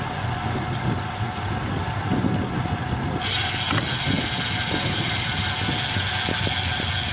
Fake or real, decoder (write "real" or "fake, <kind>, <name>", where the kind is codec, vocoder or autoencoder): real